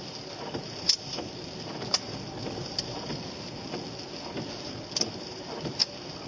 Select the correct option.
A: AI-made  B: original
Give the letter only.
B